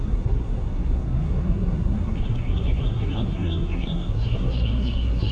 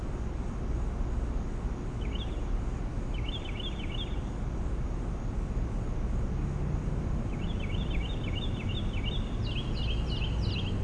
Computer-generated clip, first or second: first